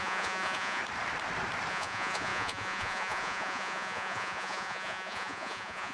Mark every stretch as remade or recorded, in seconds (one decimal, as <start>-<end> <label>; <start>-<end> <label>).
0.0-0.8 remade; 0.8-1.7 recorded; 1.7-5.9 remade